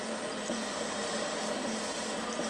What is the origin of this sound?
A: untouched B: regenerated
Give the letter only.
B